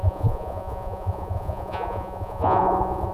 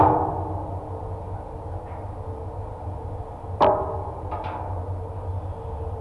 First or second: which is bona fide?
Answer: second